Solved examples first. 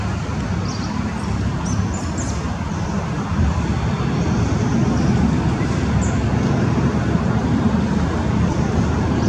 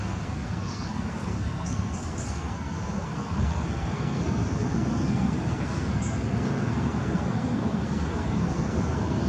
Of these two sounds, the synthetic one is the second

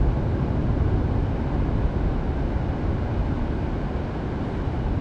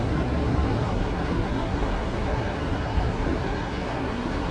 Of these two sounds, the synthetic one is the second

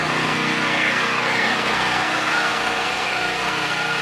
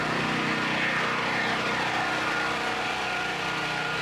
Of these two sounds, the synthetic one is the first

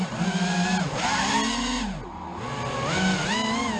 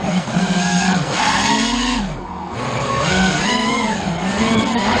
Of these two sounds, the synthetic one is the second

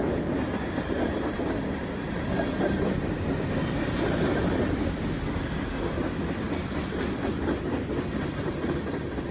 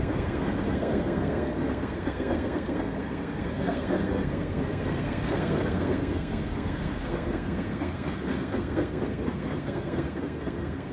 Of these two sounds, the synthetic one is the second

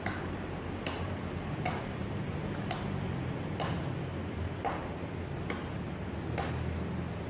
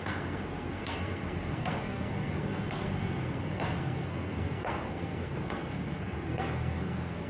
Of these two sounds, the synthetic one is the second